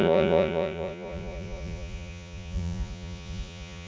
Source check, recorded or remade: remade